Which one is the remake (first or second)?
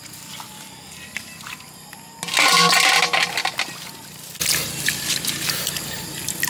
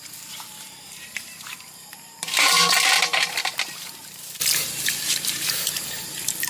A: second